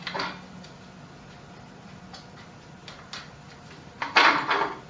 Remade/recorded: recorded